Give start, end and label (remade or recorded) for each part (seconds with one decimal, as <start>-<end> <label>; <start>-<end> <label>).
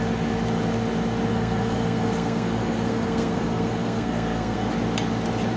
0.0-1.3 recorded; 1.3-4.7 remade; 4.7-5.6 recorded